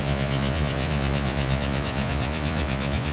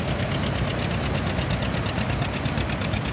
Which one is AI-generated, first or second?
first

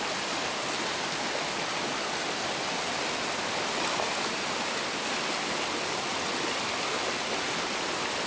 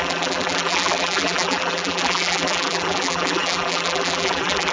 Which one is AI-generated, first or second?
second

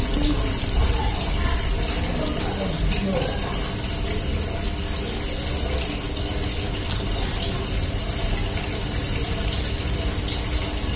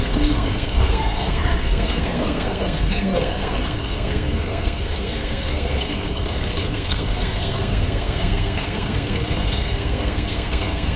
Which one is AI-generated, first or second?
second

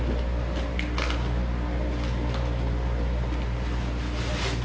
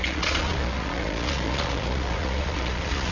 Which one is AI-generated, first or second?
second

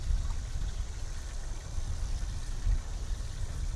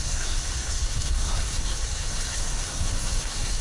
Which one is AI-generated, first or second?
second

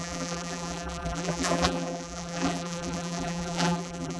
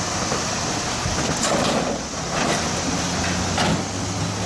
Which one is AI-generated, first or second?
first